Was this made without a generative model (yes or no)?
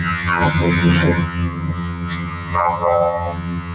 no